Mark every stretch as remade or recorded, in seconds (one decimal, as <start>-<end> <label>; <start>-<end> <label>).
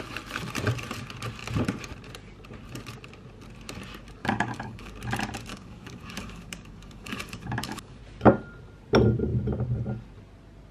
0.0-4.2 recorded; 4.2-4.9 remade; 4.9-5.5 recorded; 5.5-8.0 remade; 8.0-10.7 recorded